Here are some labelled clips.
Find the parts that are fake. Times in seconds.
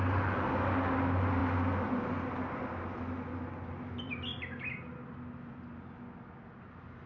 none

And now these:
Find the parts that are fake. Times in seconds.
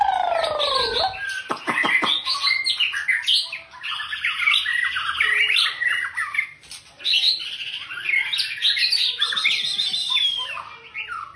none